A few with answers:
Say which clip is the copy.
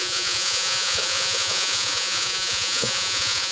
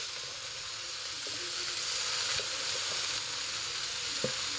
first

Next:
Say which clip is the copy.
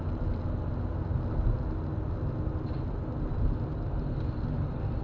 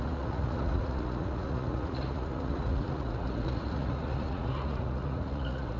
second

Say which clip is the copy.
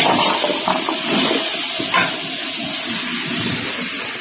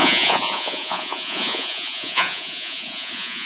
second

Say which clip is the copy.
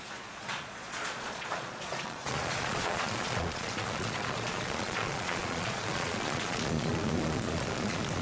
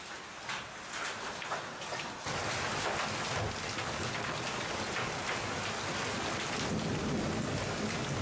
first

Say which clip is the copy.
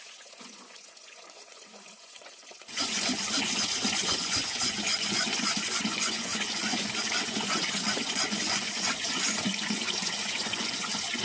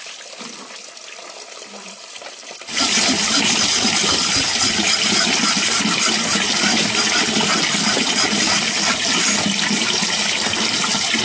first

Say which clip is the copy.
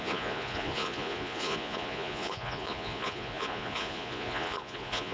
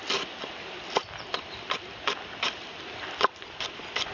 first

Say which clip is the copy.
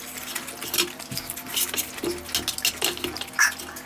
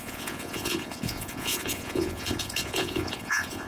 second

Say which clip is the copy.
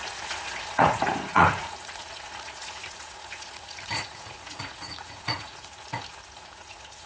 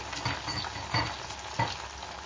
first